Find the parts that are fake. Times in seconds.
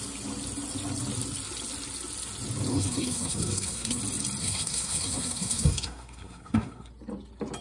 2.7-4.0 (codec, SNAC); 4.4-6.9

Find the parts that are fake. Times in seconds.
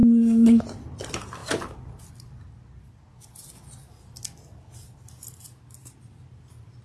0.0-0.6 (codec, SNAC)